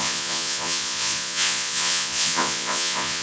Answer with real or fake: fake